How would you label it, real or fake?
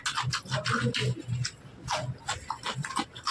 real